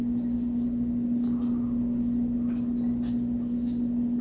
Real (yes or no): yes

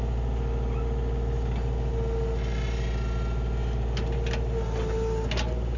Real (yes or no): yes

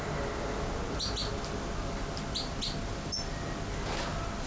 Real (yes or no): yes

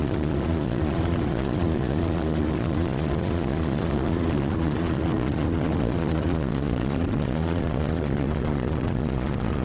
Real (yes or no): no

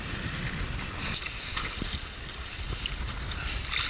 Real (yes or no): yes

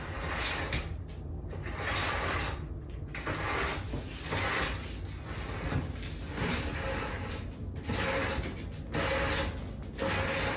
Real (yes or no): yes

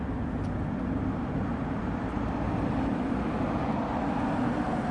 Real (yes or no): yes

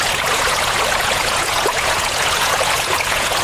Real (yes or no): no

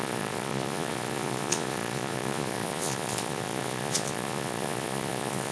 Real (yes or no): no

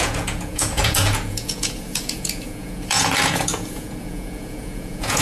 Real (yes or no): no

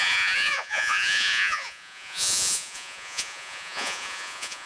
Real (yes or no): no